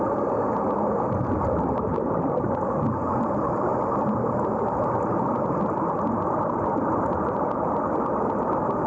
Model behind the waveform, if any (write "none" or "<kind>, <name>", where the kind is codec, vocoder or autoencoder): none